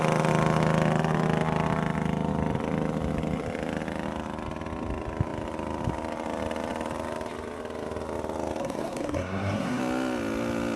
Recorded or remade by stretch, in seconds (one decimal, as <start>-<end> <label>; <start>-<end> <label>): 0.0-8.6 recorded; 8.6-9.8 remade; 9.8-10.8 recorded